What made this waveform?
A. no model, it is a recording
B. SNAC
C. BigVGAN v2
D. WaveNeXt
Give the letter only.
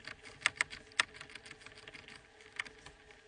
A